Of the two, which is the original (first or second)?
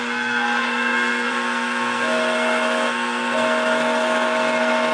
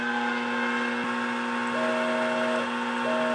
second